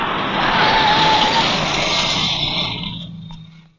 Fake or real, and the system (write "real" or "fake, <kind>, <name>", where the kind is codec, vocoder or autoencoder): real